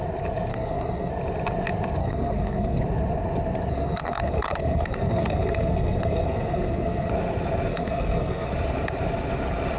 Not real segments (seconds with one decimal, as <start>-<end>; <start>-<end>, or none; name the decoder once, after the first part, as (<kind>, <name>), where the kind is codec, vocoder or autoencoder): 0.5-1.1 (codec, SNAC); 2.0-2.8; 3.7-7.1; 7.7-8.5